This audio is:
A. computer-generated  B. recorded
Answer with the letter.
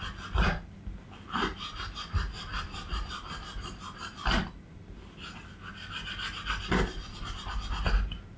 B